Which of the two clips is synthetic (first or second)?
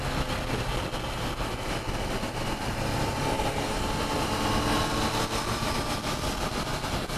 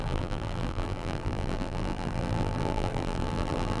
second